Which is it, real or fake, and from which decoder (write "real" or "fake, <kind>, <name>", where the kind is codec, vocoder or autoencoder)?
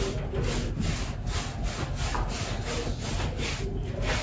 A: real